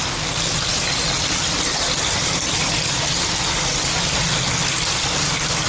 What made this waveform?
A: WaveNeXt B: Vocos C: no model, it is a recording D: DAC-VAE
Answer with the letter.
C